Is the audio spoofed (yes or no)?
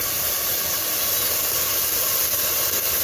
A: no